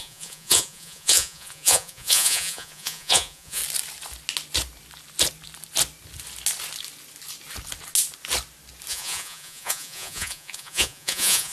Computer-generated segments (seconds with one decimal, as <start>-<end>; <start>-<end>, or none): 0.0-3.6; 8.9-11.5